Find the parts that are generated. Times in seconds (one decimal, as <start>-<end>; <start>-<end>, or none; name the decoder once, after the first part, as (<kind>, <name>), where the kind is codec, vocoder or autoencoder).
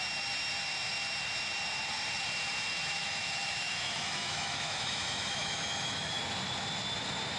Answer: 3.0-6.2 (autoencoder, DAC-VAE)